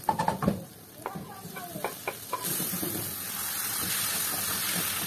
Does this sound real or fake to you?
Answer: real